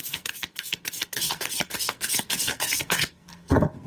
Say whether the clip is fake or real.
fake